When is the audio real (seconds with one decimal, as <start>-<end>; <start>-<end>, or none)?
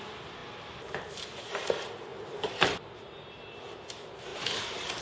0.0-2.1; 3.6-5.0